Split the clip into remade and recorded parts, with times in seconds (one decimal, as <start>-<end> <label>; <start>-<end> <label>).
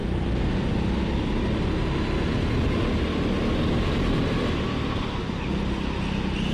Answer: 0.0-6.5 recorded